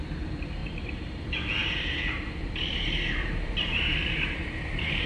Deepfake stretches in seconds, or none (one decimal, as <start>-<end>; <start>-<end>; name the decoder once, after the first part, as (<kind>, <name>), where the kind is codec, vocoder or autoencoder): 0.6-1.2 (vocoder, BigVGAN v2); 1.6-5.1